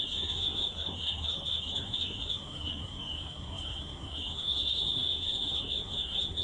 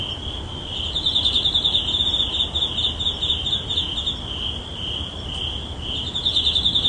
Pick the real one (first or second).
second